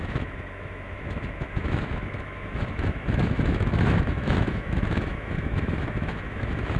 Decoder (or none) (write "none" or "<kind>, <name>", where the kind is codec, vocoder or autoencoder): autoencoder, DAC-VAE